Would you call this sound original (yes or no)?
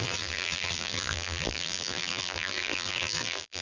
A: no